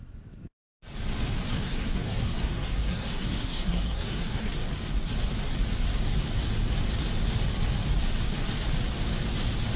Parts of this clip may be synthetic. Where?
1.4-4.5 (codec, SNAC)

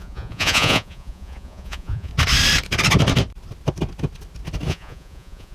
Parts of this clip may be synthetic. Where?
0.0-2.1 (vocoder, Vocos); 4.7-5.5

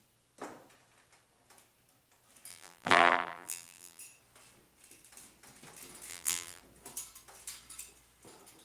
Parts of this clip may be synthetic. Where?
2.5-4.0 (vocoder, BigVGAN v2); 6.1-6.6

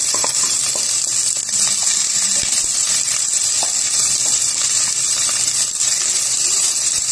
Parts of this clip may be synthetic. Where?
0.0-0.6 (vocoder, BigVGAN v2); 4.0-7.1

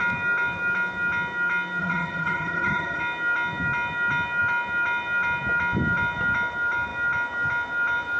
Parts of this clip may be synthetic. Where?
1.8-3.0 (vocoder, HiFi-GAN)

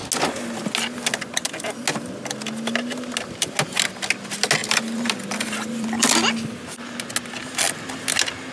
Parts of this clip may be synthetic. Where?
4.6-6.1 (vocoder, BigVGAN v2); 7.4-7.9